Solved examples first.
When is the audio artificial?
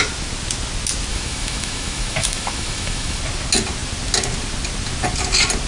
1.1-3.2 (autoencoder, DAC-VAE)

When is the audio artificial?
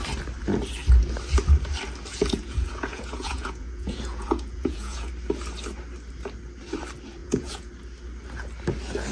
2.1-5.1 (vocoder, Vocos); 7.2-7.7